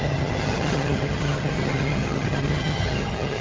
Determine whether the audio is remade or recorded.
remade